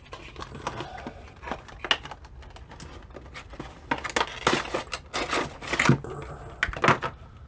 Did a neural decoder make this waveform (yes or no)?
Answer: no